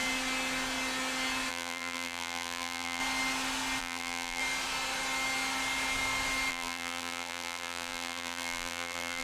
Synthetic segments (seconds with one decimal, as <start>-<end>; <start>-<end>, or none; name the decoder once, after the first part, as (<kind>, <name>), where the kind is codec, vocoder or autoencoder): 1.5-3.0 (vocoder, BigVGAN v2); 3.8-4.4; 6.5-9.2